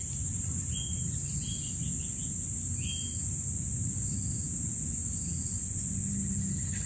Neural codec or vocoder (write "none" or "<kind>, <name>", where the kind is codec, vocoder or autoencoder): none